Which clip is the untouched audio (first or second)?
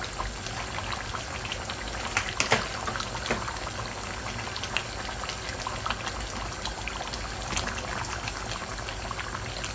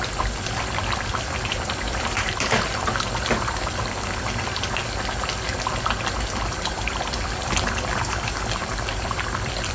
first